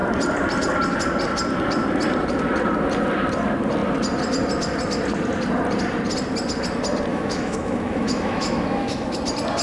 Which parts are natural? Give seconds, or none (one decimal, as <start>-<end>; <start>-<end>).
0.0-7.1; 9.2-9.6